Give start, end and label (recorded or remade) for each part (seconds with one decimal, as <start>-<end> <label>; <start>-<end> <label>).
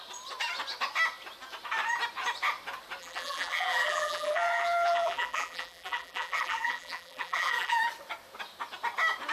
0.0-3.0 recorded; 3.0-7.8 remade; 7.8-9.3 recorded